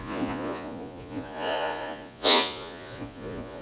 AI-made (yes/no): yes